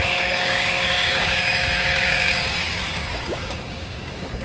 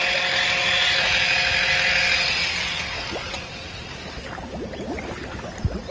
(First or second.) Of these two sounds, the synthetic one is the first